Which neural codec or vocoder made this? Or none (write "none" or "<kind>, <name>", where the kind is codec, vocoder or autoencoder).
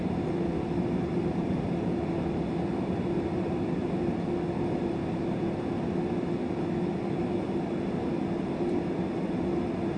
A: none